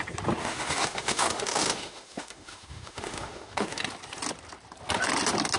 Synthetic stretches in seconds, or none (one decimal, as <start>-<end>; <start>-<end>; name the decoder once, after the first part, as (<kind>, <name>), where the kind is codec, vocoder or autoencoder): 0.4-3.8 (autoencoder, DAC-VAE)